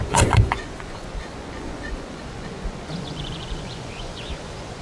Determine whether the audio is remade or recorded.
remade